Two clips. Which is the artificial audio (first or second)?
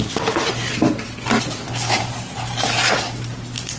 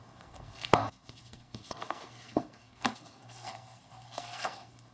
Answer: second